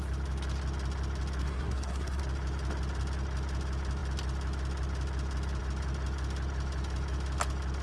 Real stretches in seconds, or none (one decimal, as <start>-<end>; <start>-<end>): 0.0-1.4; 2.2-7.8